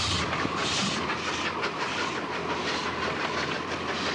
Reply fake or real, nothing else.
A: real